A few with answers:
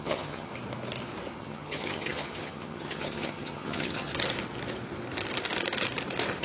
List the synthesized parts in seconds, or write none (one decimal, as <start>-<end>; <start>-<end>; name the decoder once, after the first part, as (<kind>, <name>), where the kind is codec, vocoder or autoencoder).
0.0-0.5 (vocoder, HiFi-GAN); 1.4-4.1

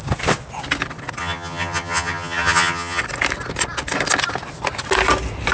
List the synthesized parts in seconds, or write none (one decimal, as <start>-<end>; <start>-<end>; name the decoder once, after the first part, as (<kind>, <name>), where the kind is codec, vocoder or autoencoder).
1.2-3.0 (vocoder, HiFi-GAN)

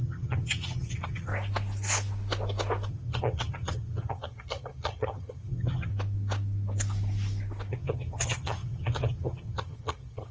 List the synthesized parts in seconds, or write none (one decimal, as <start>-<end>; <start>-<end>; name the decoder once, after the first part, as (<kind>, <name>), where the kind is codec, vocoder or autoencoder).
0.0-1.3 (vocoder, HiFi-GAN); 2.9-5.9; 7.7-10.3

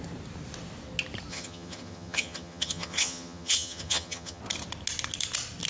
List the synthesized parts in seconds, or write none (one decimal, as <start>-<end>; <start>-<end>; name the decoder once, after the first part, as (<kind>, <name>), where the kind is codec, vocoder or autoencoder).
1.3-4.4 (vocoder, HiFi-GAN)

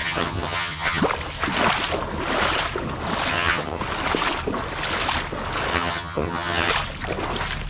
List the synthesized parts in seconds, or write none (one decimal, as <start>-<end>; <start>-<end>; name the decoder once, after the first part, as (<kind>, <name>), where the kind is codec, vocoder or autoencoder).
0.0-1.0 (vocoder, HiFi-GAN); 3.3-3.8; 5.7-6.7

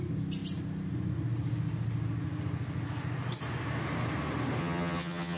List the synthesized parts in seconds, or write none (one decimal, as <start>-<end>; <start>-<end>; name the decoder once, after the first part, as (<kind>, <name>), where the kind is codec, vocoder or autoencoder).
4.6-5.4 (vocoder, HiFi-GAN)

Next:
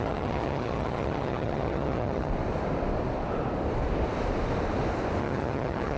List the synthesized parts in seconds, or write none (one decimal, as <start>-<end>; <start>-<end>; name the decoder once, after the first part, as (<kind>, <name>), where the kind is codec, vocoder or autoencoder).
0.0-2.3 (vocoder, HiFi-GAN); 5.2-6.0